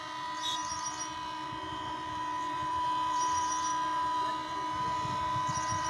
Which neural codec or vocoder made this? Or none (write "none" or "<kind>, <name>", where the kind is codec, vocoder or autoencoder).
vocoder, BigVGAN v2